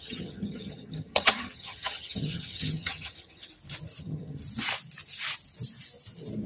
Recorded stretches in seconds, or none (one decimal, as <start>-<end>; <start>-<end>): 3.5-4.0; 4.4-6.5